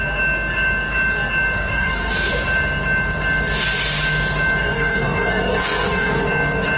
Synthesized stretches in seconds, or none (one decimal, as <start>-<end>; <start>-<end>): 1.7-2.3; 4.6-6.2